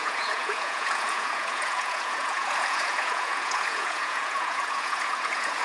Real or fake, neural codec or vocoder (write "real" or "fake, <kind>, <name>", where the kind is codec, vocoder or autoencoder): fake, vocoder, Vocos